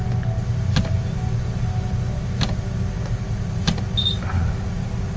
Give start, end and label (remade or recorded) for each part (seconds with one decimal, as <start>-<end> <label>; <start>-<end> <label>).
0.0-5.2 recorded